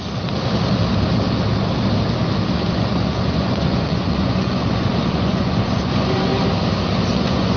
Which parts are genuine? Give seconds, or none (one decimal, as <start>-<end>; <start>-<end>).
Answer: 0.0-2.7; 6.3-7.1